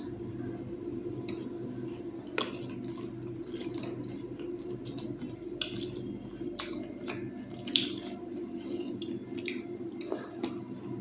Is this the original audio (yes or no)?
yes